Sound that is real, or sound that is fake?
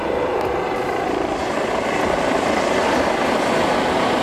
real